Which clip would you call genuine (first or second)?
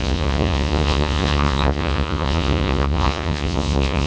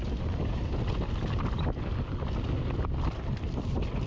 second